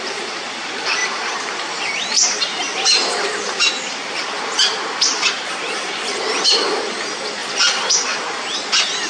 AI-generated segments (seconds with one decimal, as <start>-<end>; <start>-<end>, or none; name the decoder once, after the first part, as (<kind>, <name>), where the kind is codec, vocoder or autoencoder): 1.0-1.8 (vocoder, BigVGAN v2); 7.4-7.9